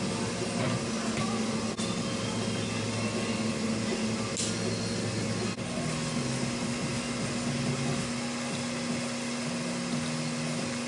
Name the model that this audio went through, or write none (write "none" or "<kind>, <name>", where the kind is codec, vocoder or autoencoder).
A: none